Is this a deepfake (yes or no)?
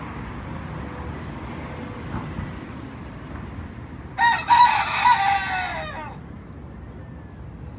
no